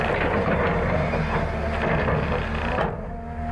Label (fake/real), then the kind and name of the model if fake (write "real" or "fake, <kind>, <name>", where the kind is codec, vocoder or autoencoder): real